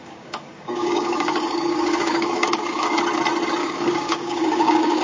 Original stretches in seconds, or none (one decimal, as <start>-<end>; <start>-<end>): 3.0-3.6

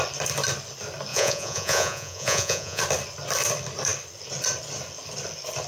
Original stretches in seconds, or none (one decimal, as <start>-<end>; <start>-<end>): 0.0-1.1; 2.8-5.7

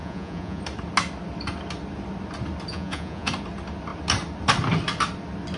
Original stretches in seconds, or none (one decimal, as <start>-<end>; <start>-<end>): 0.6-2.7; 3.3-5.6

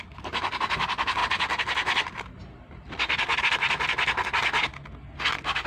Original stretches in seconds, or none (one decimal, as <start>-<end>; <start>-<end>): 0.0-5.7